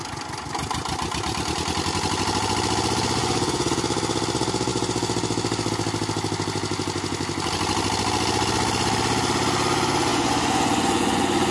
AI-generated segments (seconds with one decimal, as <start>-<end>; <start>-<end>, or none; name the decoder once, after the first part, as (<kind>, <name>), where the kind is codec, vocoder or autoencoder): 3.2-3.7 (vocoder, Vocos); 10.1-11.5